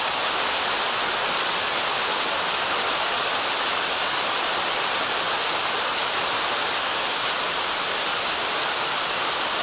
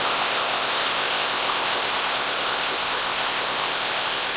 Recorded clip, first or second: first